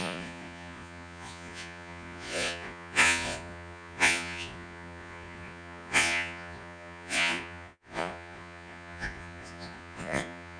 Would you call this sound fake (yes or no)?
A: yes